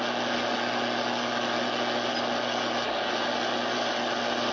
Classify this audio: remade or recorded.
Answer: recorded